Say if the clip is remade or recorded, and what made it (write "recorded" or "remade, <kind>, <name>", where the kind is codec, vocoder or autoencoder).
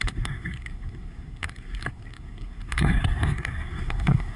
remade, codec, SNAC